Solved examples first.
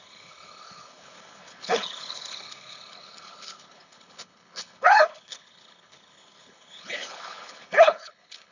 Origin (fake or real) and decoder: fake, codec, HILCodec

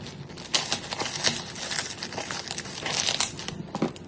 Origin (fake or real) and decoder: real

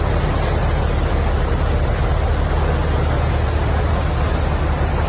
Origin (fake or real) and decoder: real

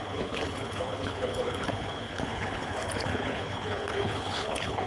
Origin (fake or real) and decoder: fake, codec, HILCodec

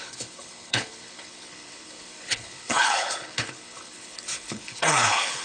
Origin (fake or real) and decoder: fake, codec, HILCodec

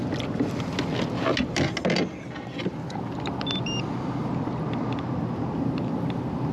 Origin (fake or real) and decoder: real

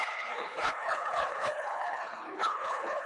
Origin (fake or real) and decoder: fake, codec, HILCodec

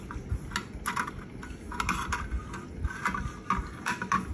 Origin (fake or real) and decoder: real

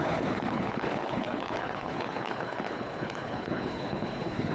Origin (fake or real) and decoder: fake, codec, HILCodec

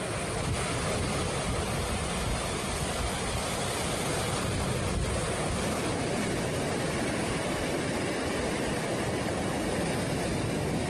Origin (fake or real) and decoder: real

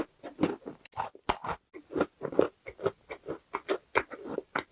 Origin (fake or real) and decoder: real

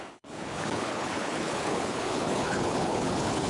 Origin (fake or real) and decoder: fake, codec, HILCodec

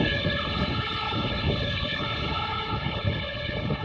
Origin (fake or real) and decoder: fake, codec, HILCodec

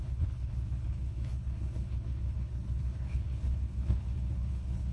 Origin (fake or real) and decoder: fake, codec, HILCodec